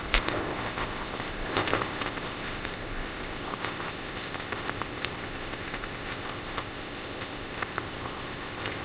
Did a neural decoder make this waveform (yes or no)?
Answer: yes